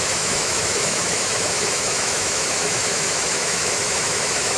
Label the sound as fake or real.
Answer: fake